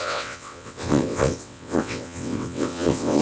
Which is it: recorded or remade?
remade